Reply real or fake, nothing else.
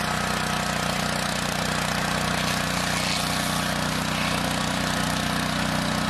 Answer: real